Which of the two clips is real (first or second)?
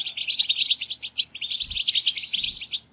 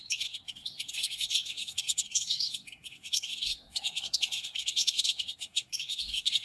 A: first